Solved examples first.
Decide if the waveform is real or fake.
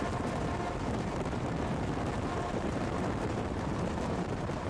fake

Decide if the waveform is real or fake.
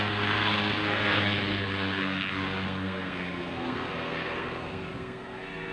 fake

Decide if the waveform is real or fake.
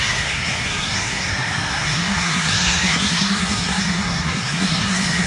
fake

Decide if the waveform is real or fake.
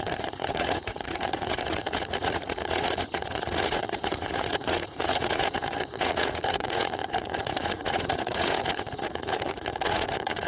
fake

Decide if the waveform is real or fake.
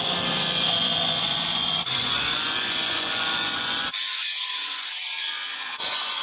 fake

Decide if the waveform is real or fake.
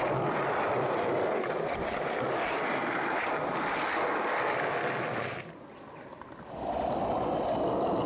real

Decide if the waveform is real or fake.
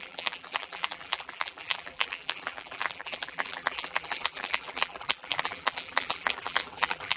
fake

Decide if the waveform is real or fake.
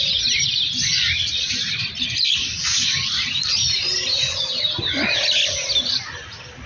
real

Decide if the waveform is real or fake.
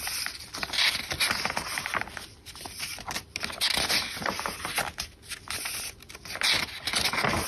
real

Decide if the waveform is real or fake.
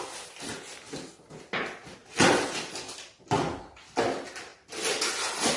real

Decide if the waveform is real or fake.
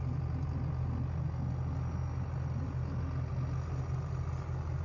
real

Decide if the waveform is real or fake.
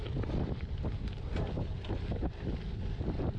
fake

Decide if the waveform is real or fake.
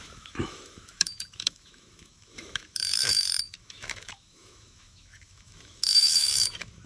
fake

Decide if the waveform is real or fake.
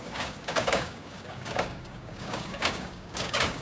fake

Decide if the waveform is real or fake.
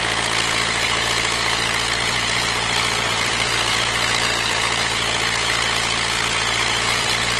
fake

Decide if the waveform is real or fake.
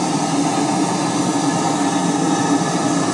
real